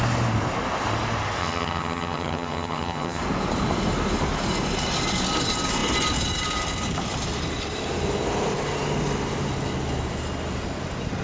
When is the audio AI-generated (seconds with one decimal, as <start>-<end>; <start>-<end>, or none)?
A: 1.4-3.2